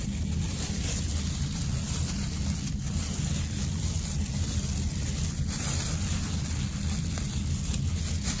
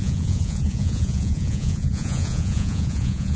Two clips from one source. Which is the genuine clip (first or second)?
first